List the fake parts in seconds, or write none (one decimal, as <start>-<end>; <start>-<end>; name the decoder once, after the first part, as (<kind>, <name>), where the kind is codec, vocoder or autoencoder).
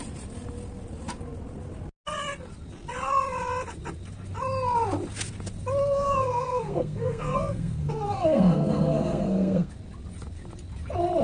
5.8-9.7 (codec, SNAC)